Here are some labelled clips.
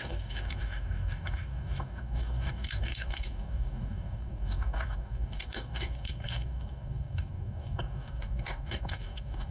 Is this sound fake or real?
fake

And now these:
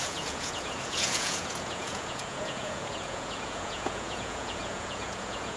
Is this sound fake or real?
fake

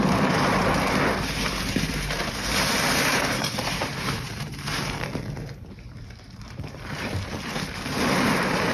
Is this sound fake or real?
fake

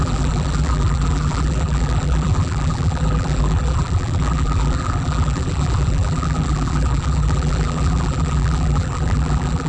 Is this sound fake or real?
fake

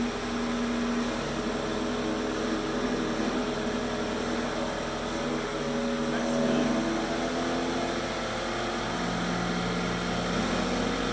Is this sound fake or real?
real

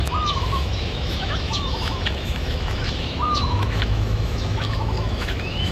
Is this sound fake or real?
fake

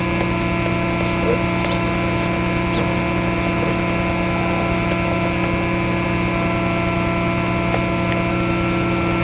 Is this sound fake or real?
real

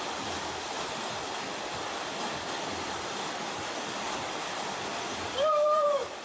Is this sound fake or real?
fake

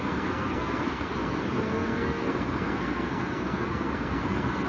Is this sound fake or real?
fake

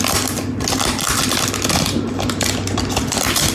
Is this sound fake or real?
real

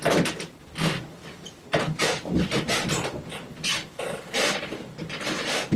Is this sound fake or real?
real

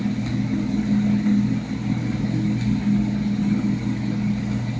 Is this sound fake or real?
real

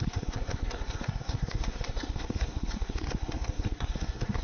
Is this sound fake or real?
fake